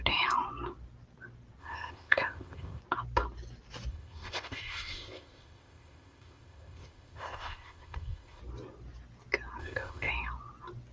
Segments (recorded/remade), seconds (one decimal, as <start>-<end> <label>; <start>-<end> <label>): 0.0-1.6 recorded; 1.6-2.8 remade; 2.8-3.9 recorded; 3.9-8.4 remade; 8.4-9.6 recorded; 9.6-10.1 remade; 10.1-10.9 recorded